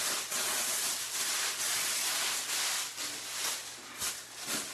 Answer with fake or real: real